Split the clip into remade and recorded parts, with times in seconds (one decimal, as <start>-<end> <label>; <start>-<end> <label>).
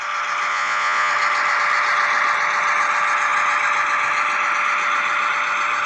0.0-0.5 recorded; 0.5-1.1 remade; 1.1-5.9 recorded